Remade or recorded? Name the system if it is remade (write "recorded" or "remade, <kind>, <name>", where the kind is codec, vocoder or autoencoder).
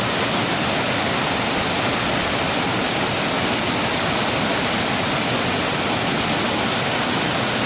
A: recorded